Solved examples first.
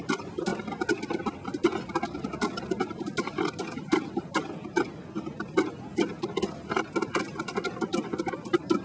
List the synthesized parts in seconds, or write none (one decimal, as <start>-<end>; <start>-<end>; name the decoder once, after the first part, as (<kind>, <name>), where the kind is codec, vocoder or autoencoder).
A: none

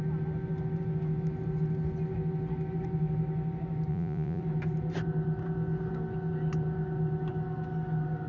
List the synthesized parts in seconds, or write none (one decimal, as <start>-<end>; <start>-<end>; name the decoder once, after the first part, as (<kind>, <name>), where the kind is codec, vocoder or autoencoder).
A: 3.9-4.4 (vocoder, Vocos)

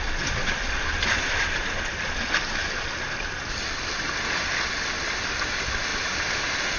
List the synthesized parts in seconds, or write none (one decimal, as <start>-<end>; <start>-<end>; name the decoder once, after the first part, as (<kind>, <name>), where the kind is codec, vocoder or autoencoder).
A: none

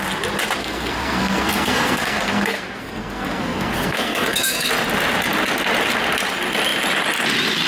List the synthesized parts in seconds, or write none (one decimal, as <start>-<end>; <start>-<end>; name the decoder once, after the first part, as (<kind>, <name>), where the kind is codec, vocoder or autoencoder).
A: 0.6-4.7 (codec, SNAC)

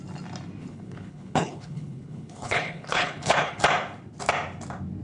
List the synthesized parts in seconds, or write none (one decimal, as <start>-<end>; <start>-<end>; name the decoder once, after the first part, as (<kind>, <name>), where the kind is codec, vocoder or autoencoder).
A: 0.6-3.6 (codec, HILCodec)

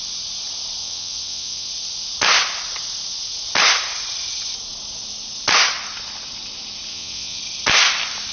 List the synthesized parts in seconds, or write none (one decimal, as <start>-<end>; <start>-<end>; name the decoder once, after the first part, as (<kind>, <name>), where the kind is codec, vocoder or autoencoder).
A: 0.8-1.7 (vocoder, WaveNeXt); 6.9-7.4

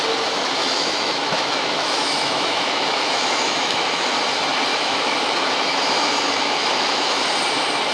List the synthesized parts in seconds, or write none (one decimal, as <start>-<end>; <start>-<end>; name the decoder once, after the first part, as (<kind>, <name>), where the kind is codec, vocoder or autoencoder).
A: 0.6-4.1 (autoencoder, DAC-VAE); 4.7-7.2

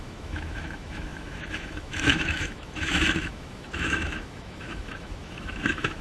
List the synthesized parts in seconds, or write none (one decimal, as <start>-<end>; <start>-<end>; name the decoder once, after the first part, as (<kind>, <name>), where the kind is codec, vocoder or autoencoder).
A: 0.0-6.0 (autoencoder, DAC-VAE)